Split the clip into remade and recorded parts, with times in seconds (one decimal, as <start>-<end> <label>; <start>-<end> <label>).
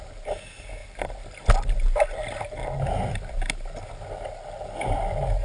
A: 0.0-5.4 recorded